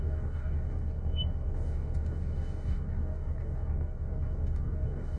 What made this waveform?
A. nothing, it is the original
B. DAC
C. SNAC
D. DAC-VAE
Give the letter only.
B